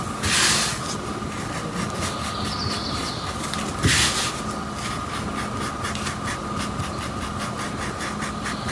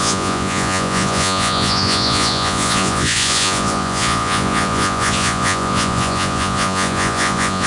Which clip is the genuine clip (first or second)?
first